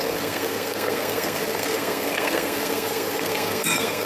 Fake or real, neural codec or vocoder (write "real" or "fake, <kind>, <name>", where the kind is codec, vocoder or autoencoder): fake, codec, SNAC